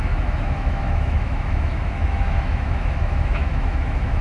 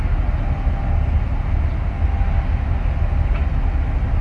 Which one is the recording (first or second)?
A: second